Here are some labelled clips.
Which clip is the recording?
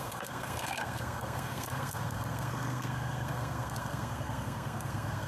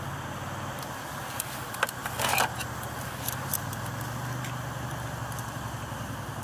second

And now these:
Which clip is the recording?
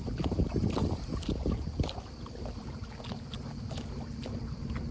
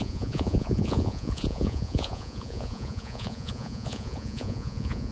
first